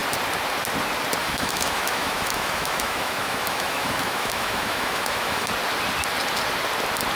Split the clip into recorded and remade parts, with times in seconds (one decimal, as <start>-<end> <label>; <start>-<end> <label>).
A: 0.0-1.2 recorded; 1.2-5.5 remade; 5.5-7.2 recorded